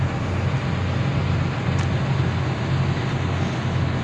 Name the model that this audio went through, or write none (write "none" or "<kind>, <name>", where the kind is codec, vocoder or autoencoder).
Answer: none